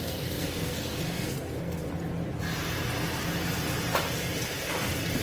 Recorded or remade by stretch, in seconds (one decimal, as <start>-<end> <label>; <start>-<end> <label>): 0.0-1.8 remade; 1.8-5.2 recorded